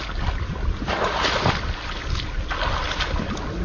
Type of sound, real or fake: real